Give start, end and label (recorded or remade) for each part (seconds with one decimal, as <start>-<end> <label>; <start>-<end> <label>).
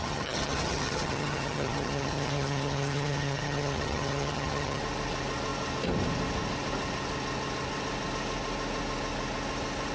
0.0-4.8 remade; 4.8-9.9 recorded